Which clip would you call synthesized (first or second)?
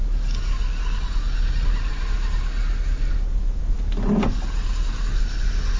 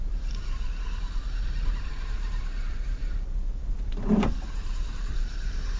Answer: second